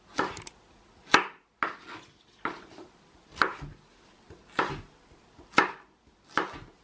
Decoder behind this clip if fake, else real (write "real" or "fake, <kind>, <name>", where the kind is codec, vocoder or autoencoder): real